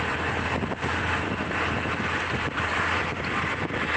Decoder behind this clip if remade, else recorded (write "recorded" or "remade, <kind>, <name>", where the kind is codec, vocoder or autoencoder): remade, vocoder, BigVGAN v2